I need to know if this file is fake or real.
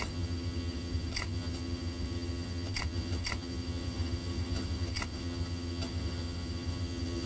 fake